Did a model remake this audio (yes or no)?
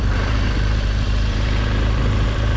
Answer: yes